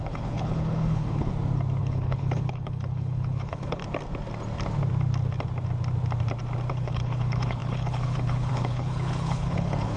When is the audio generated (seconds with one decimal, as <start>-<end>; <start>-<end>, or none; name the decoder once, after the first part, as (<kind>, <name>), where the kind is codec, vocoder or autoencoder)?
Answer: 0.0-1.3 (codec, HILCodec); 1.8-3.8; 6.7-10.0